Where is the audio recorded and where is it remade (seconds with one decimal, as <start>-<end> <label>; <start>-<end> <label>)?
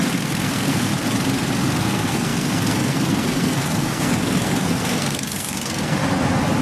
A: 0.0-0.9 remade; 0.9-1.8 recorded; 1.8-6.0 remade; 6.0-6.6 recorded